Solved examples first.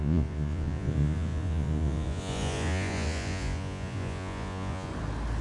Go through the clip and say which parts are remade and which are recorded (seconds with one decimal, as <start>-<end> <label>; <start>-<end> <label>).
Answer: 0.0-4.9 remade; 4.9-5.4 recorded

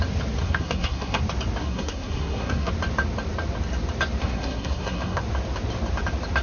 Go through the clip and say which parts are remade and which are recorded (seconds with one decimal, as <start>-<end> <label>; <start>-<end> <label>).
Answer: 0.0-0.4 recorded; 0.4-1.2 remade; 1.2-1.6 recorded; 1.6-2.7 remade; 2.7-4.2 recorded; 4.2-5.2 remade; 5.2-6.4 recorded

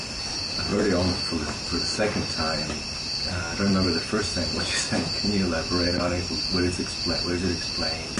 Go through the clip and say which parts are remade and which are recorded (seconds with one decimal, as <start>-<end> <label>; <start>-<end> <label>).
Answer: 0.0-0.7 recorded; 0.7-4.8 remade; 4.8-5.9 recorded; 5.9-6.4 remade; 6.4-8.2 recorded

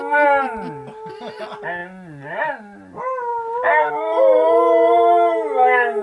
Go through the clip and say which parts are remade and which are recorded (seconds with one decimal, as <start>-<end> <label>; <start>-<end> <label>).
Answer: 0.0-6.0 recorded

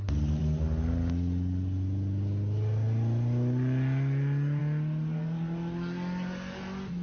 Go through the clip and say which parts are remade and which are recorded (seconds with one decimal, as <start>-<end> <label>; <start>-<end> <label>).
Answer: 0.0-7.0 recorded

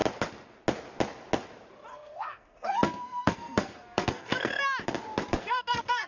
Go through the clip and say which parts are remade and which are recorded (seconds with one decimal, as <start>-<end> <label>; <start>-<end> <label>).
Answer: 0.0-1.9 recorded; 1.9-4.6 remade; 4.6-5.4 recorded; 5.4-6.1 remade

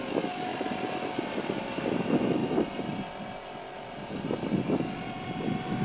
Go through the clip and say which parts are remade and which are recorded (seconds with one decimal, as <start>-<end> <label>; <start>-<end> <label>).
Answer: 0.0-5.8 recorded